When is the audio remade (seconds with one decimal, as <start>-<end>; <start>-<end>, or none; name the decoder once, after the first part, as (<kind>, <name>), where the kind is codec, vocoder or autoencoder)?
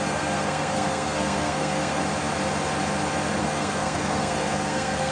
0.0-2.0 (codec, SNAC); 3.4-5.1